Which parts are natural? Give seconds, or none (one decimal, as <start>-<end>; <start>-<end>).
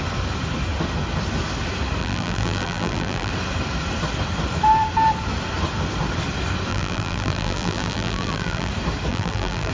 0.0-2.0; 3.3-6.7; 8.7-9.1